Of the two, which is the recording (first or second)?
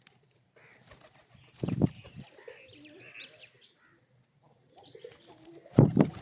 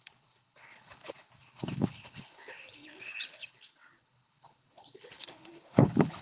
first